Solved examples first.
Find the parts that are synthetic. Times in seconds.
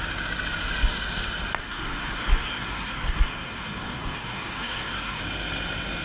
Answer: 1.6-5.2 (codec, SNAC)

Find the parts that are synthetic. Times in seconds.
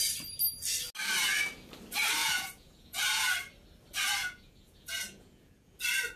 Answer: 2.2-3.3 (vocoder, Vocos); 4.2-5.8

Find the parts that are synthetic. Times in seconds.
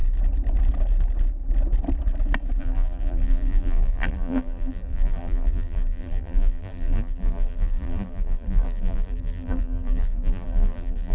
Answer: 2.6-11.1 (vocoder, BigVGAN v2)